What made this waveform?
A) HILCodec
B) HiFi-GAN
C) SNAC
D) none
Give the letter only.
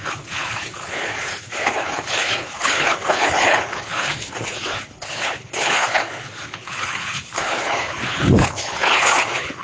A